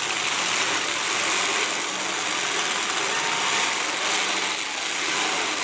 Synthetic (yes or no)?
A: no